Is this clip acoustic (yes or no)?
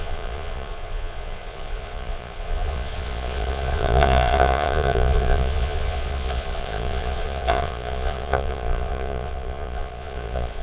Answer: no